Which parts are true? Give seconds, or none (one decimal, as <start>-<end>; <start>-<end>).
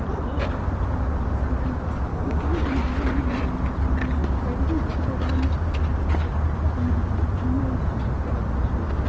0.0-2.1; 2.6-9.1